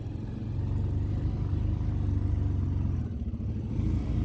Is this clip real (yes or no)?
yes